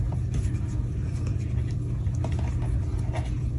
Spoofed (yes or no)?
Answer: no